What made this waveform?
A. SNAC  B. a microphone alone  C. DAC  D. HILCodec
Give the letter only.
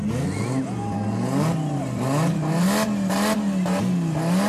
B